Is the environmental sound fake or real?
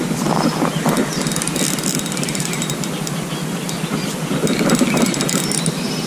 real